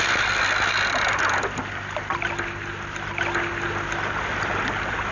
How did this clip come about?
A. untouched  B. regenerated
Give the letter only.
B